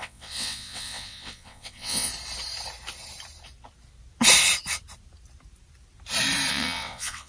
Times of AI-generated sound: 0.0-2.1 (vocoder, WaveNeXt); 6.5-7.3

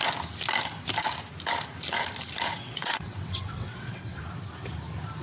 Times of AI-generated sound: 2.5-4.2 (vocoder, WaveNeXt)